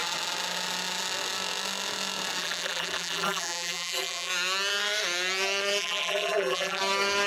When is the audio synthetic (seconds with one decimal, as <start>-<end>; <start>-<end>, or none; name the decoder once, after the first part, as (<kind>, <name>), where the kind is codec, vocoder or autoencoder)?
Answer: 2.4-4.3 (vocoder, BigVGAN v2); 5.8-6.8